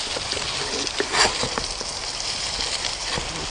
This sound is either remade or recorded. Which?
recorded